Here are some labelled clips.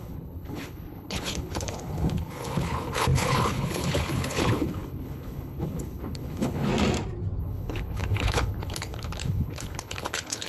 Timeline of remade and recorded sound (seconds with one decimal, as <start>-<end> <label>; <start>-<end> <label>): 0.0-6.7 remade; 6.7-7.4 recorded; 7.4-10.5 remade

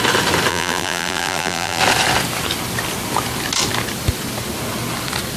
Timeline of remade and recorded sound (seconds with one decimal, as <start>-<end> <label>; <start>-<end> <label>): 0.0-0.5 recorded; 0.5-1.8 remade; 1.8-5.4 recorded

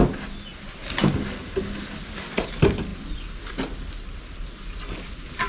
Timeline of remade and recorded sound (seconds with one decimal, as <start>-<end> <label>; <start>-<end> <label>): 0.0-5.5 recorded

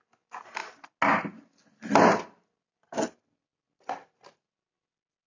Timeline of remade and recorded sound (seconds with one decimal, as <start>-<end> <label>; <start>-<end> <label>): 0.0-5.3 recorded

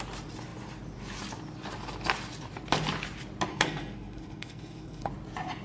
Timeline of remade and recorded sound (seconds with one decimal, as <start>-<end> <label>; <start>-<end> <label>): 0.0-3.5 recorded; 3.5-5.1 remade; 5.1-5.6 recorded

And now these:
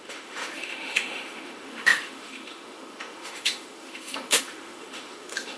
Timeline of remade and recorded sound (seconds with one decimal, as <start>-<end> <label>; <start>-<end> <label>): 0.0-5.6 remade

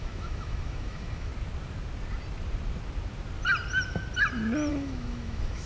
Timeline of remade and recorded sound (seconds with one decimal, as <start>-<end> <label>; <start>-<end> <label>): 0.0-1.3 remade; 1.3-4.7 recorded; 4.7-5.7 remade